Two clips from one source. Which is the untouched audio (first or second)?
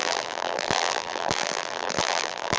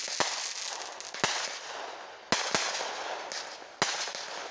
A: second